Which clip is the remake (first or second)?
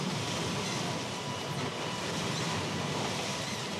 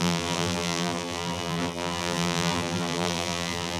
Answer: second